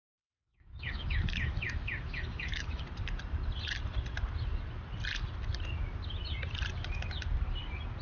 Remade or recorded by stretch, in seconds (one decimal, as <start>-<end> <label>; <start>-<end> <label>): 0.0-2.8 remade; 2.8-8.0 recorded